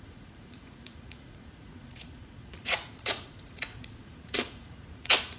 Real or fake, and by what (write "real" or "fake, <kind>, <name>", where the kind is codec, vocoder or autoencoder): fake, vocoder, Vocos